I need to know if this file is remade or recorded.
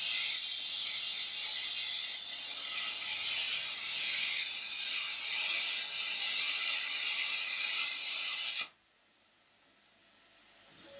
recorded